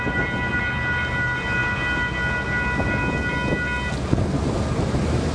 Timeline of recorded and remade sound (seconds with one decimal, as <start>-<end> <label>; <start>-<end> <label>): 0.0-5.3 recorded